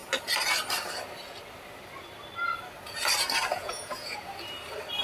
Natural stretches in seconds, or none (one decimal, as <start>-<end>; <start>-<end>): 0.0-3.5; 4.3-5.0